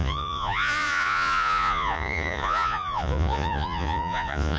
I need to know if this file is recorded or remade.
remade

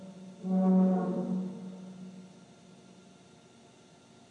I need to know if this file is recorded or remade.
recorded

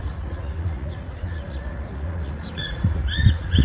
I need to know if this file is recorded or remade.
remade